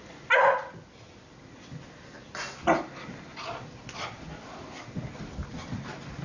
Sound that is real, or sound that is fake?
real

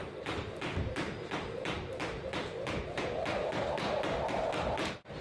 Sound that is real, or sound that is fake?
fake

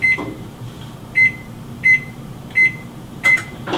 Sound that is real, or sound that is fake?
fake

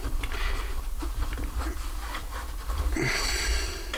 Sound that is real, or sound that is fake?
fake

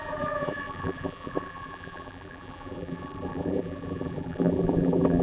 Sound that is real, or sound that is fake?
fake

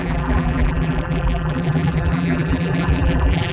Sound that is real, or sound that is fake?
fake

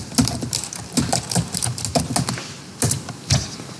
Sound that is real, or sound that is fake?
real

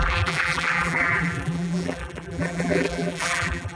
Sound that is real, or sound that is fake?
fake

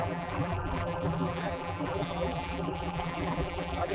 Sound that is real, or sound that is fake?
fake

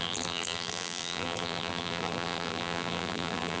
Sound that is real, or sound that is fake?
fake